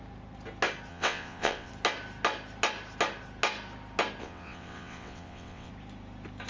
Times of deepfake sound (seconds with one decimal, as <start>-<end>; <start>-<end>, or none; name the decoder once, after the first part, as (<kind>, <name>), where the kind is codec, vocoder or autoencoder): 0.9-1.7 (vocoder, WaveNeXt); 4.2-5.7